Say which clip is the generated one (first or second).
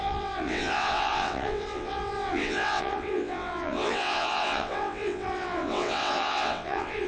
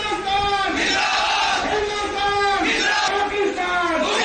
first